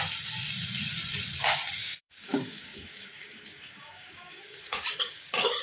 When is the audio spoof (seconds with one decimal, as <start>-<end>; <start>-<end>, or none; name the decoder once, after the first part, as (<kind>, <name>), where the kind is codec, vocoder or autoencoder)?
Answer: 1.8-5.6 (codec, DAC)